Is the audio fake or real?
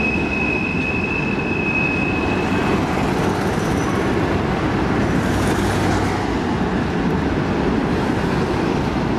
real